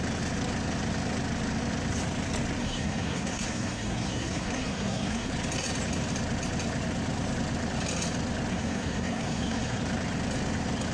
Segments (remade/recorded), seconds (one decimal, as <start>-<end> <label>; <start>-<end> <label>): 0.0-2.6 recorded; 2.6-5.3 remade; 5.3-8.5 recorded; 8.5-9.8 remade; 9.8-10.9 recorded